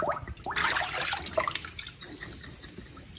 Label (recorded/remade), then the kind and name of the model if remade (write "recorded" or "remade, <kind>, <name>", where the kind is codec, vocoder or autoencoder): recorded